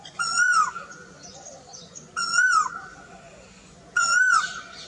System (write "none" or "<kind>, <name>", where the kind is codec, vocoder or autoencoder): vocoder, Vocos